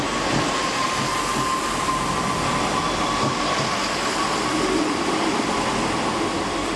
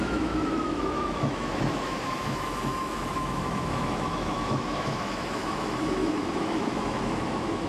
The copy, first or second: second